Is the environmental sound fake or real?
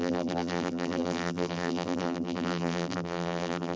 fake